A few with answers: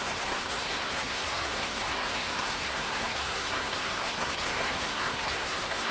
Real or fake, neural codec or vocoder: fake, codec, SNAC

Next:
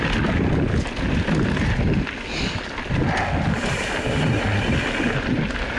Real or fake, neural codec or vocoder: real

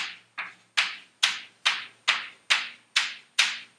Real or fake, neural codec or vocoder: real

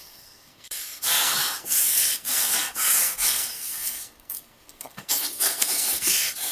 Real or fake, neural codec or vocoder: fake, codec, SNAC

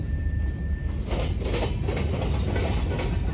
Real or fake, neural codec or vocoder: real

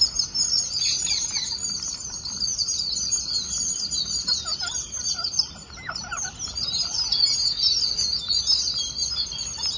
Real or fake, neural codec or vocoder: real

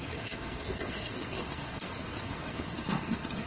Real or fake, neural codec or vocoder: fake, codec, SNAC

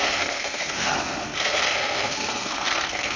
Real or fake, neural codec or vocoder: fake, codec, SNAC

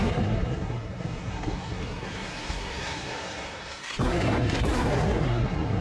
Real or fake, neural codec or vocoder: fake, codec, SNAC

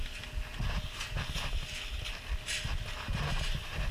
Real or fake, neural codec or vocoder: real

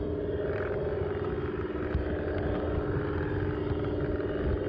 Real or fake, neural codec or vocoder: real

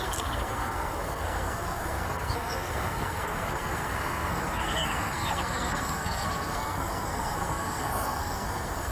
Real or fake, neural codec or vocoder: fake, codec, SNAC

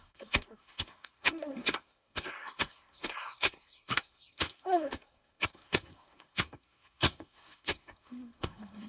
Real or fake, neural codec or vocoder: fake, codec, SNAC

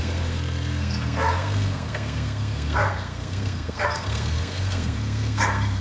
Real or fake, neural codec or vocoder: fake, codec, SNAC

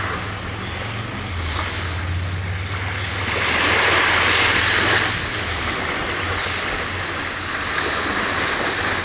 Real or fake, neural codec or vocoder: real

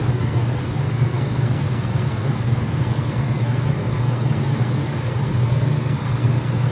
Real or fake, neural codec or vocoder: fake, codec, SNAC